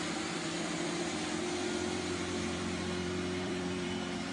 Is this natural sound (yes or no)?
no